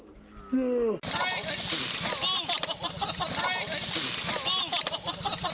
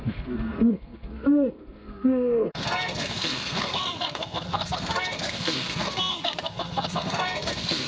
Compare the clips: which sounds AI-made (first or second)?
second